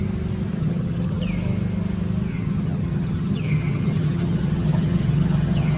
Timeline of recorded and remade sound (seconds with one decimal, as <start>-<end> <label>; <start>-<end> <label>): 0.0-0.6 recorded; 0.6-1.2 remade; 1.2-2.3 recorded; 2.3-5.8 remade